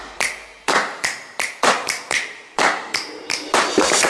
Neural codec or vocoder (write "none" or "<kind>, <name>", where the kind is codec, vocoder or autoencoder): vocoder, BigVGAN v2